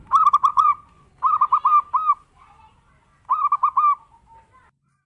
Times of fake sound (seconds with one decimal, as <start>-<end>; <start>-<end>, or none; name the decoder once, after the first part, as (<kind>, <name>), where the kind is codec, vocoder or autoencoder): 0.5-1.1 (vocoder, Vocos)

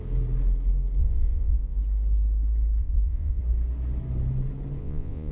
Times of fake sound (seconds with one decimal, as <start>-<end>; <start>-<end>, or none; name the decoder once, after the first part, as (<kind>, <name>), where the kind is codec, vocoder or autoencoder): 1.0-1.8 (vocoder, Vocos); 2.8-3.4; 4.8-5.3

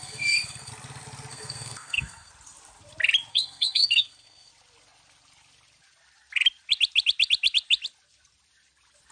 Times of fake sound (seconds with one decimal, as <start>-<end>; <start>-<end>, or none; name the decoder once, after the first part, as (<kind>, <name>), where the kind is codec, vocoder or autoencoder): 0.0-0.7 (codec, SNAC); 1.3-2.3; 3.3-4.5

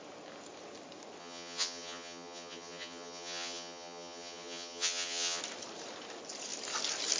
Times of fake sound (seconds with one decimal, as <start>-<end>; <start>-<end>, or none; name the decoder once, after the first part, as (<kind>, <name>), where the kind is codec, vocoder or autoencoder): 1.2-5.4 (vocoder, HiFi-GAN)